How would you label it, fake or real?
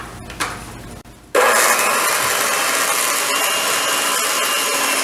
real